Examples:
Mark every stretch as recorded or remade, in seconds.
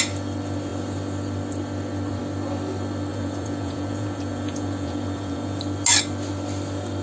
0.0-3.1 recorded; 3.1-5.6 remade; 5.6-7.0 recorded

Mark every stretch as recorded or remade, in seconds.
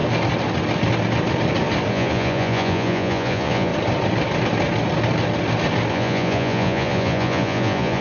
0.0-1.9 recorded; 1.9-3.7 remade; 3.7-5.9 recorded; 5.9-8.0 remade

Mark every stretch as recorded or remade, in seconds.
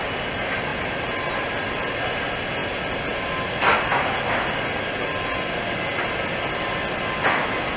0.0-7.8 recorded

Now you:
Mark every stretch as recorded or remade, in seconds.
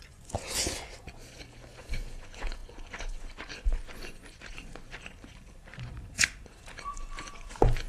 0.0-7.9 remade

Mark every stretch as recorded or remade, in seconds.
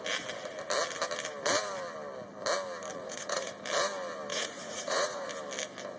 0.0-2.9 recorded; 2.9-3.5 remade; 3.5-4.3 recorded; 4.3-5.3 remade; 5.3-6.0 recorded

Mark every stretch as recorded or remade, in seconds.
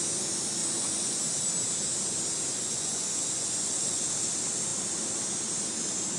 0.0-0.6 recorded; 0.6-1.2 remade; 1.2-2.5 recorded; 2.5-4.0 remade; 4.0-6.2 recorded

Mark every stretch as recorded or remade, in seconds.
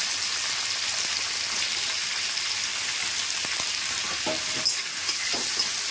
0.0-5.9 recorded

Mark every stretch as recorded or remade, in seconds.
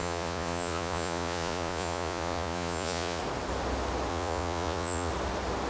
0.0-3.2 remade; 3.2-4.1 recorded; 4.1-5.1 remade; 5.1-5.7 recorded